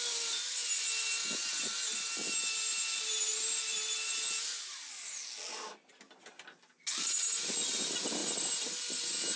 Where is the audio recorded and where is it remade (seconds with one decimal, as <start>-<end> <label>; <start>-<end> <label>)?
0.0-9.4 recorded

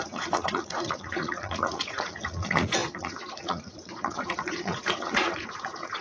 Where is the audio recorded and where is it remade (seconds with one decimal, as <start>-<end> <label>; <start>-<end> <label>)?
0.0-6.0 remade